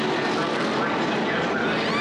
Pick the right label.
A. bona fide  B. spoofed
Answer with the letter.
A